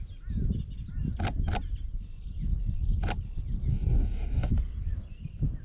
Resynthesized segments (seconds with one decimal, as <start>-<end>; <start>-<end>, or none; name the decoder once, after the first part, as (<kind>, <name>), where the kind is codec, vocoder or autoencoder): 3.7-4.5 (codec, DAC)

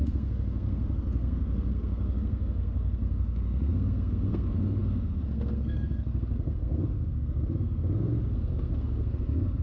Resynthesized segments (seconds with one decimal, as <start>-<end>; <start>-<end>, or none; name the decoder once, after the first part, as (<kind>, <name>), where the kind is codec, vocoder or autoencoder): 0.0-9.6 (codec, SNAC)

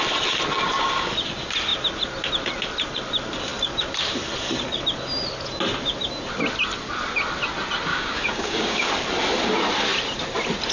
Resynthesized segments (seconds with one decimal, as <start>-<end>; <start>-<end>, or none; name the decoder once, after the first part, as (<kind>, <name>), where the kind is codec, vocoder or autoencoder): 7.9-8.9 (codec, DAC)

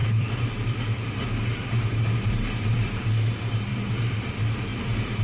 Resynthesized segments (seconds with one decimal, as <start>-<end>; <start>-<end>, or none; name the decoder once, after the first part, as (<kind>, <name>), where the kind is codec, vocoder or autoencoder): 0.0-3.1 (vocoder, BigVGAN v2); 3.7-4.3